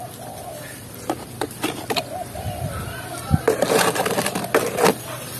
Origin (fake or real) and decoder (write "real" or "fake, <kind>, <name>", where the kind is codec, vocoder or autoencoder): fake, vocoder, BigVGAN v2